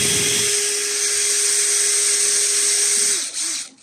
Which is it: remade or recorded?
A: recorded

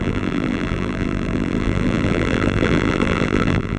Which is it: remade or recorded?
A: remade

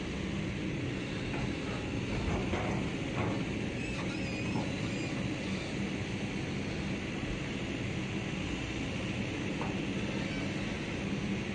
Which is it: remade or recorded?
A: recorded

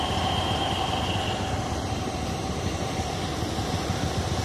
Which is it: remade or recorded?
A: recorded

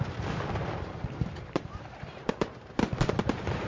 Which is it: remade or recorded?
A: remade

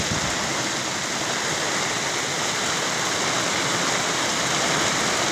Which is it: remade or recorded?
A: recorded